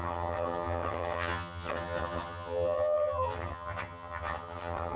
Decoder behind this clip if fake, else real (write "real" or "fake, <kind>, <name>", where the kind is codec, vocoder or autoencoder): fake, vocoder, HiFi-GAN